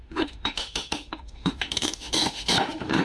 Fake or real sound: fake